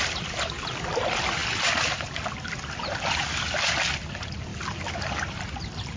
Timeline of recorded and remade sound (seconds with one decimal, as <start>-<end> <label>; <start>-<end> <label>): 0.0-6.0 recorded